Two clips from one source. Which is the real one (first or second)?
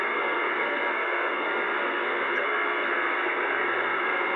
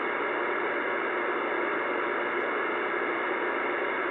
second